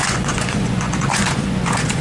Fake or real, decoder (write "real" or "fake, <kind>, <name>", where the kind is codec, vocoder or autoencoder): fake, vocoder, Vocos